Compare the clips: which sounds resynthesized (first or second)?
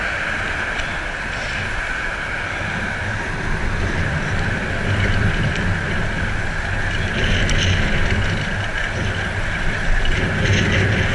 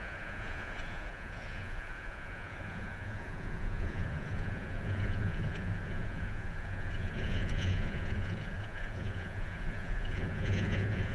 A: second